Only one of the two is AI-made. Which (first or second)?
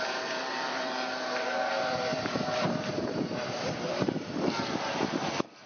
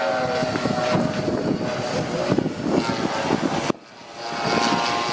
first